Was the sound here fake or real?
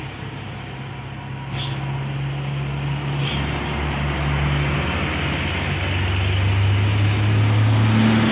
real